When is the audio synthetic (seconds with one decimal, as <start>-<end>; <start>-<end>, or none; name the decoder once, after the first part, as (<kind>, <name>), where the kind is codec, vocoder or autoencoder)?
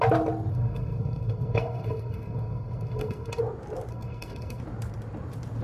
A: 0.5-3.4 (codec, SNAC); 3.9-4.6